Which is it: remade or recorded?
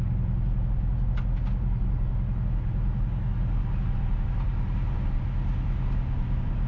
recorded